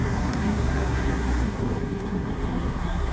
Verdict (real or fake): fake